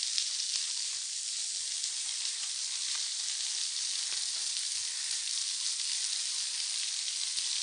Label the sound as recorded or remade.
recorded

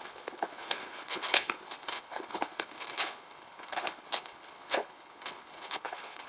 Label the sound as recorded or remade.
remade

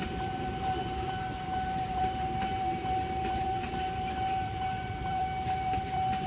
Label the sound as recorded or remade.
remade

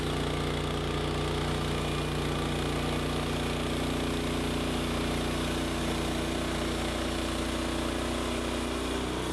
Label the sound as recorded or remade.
recorded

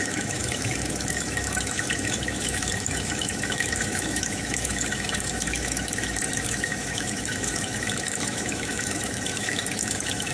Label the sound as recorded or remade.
remade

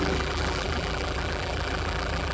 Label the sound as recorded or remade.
remade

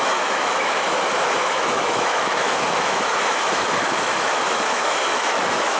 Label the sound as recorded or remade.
remade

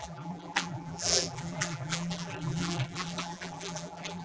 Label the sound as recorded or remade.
remade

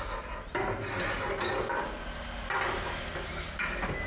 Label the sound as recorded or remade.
recorded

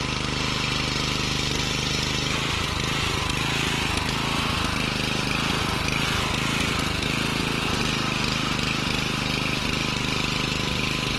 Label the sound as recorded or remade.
recorded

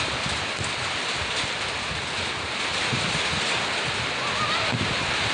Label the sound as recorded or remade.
recorded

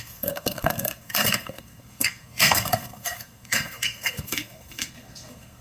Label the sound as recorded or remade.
remade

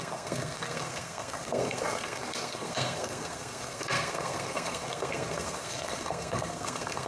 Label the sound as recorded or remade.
remade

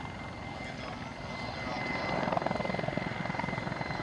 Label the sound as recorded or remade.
recorded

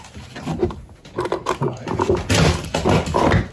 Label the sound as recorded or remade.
recorded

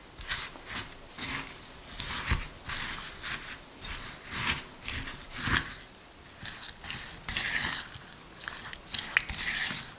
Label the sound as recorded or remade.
recorded